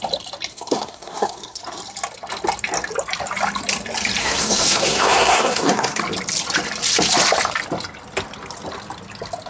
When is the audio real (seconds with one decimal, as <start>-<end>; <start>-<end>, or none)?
0.0-0.5; 1.6-4.2; 6.0-9.5